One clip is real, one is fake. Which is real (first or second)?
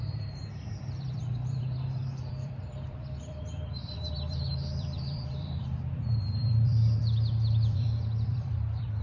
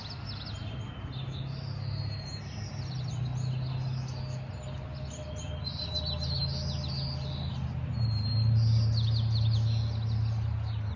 second